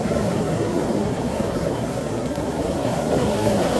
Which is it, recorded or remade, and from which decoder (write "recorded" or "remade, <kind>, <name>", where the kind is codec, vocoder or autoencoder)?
remade, codec, SNAC